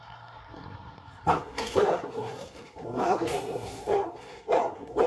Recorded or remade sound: remade